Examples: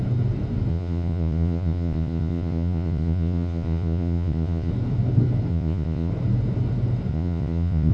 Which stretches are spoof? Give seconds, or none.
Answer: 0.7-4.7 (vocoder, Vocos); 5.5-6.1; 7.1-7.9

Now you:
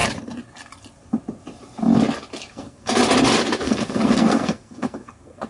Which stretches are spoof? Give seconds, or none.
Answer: 2.5-3.0 (codec, SNAC); 3.6-5.5

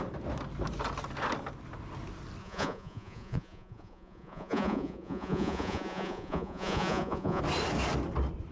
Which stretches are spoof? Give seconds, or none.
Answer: 2.4-7.4 (vocoder, Vocos)

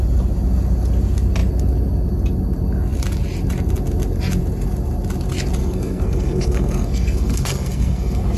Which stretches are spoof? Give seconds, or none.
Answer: 5.6-8.4 (codec, SNAC)

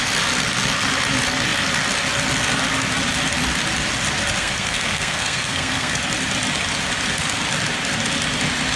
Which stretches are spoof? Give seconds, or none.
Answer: 4.4-6.0 (codec, SNAC)

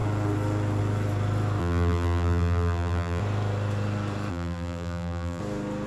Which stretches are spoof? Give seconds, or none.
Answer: 1.6-3.2 (vocoder, BigVGAN v2); 4.3-5.4